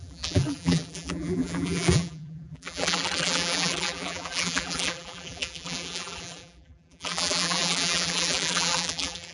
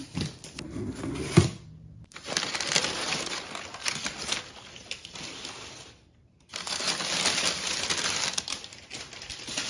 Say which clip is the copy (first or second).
first